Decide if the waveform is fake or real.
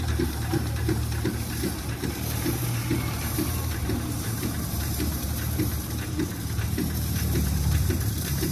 fake